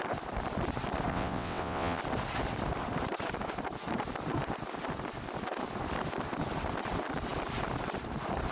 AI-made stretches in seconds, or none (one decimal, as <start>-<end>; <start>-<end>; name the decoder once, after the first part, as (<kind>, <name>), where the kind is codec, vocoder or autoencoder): 1.1-2.0 (vocoder, WaveNeXt)